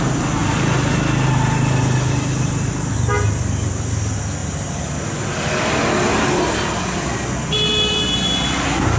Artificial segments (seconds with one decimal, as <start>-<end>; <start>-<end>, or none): none